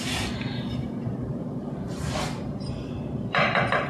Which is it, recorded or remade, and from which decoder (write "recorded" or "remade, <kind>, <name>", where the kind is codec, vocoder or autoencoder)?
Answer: remade, vocoder, BigVGAN v2